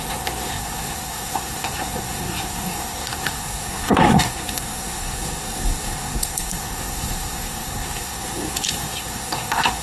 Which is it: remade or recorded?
remade